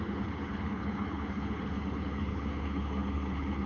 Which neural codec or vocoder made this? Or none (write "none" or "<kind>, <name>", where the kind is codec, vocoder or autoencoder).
codec, HILCodec